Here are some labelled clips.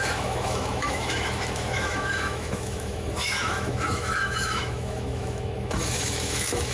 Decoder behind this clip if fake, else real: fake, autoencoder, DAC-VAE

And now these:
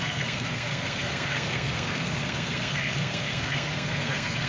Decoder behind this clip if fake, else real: fake, codec, SNAC